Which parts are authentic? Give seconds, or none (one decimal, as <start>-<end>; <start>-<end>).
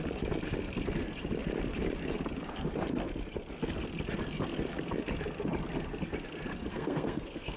0.0-6.7